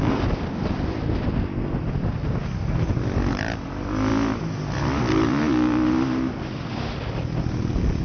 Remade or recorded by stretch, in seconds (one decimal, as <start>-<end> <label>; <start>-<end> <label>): 0.0-8.0 recorded